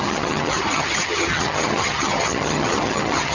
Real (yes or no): no